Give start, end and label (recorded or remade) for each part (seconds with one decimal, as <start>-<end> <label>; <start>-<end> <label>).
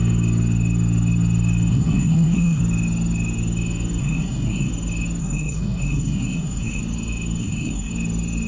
0.0-1.7 recorded; 1.7-2.6 remade; 2.6-4.0 recorded; 4.0-4.7 remade; 4.7-5.2 recorded; 5.2-6.8 remade; 6.8-7.4 recorded; 7.4-7.9 remade; 7.9-8.5 recorded